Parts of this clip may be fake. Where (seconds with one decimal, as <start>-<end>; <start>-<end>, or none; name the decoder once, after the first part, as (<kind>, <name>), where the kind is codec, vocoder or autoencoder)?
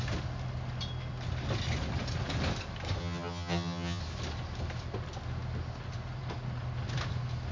3.0-4.0 (vocoder, HiFi-GAN)